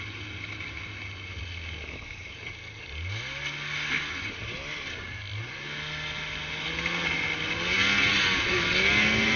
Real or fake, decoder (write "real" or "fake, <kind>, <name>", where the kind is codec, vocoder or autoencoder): real